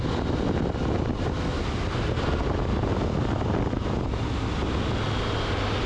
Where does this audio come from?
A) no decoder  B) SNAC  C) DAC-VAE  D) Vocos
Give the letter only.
A